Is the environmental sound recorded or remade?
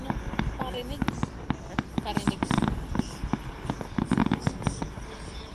recorded